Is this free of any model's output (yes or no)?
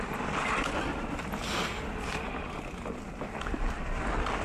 yes